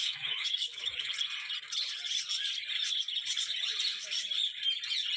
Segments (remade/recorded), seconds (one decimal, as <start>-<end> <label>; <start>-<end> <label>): 0.0-1.1 remade; 1.1-5.2 recorded